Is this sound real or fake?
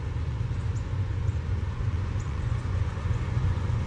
fake